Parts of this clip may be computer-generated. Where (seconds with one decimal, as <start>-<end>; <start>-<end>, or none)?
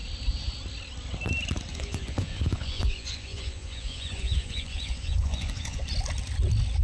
1.7-5.8